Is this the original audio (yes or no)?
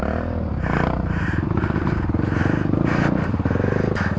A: yes